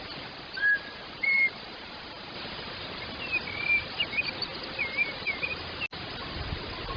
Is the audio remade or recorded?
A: recorded